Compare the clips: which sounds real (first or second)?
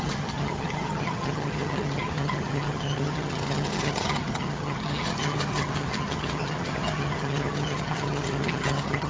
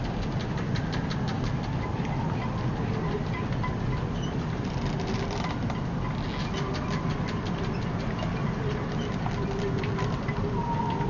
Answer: second